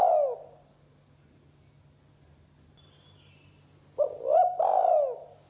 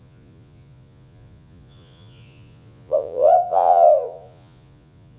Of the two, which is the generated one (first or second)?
second